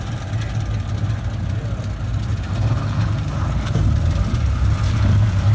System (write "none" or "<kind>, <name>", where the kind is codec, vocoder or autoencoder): none